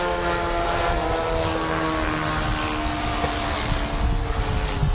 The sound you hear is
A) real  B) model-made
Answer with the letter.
A